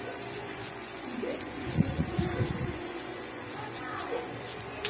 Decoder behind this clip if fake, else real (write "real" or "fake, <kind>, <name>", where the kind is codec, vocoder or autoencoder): fake, vocoder, Vocos